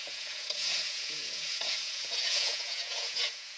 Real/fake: fake